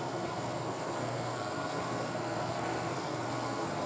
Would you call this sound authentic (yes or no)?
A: no